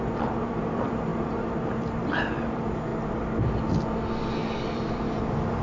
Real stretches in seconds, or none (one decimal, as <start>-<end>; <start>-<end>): 2.9-4.7